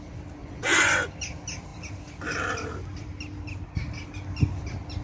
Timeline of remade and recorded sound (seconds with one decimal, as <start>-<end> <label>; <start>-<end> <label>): 0.0-0.4 recorded; 0.4-1.1 remade; 1.1-5.0 recorded